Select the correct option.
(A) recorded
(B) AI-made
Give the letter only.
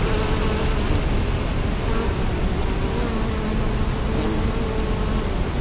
A